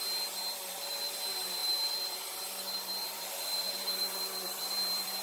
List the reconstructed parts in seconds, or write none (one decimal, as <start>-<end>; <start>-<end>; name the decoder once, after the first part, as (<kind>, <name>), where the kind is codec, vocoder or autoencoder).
0.0-5.2 (vocoder, BigVGAN v2)